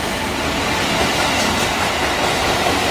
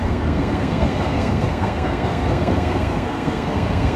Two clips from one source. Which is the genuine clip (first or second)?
first